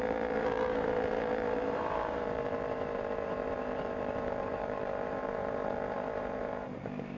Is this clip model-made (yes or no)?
yes